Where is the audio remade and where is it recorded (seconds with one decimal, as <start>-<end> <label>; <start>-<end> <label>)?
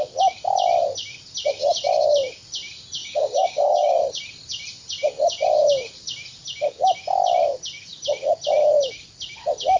0.0-3.0 recorded; 3.0-4.2 remade; 4.2-9.8 recorded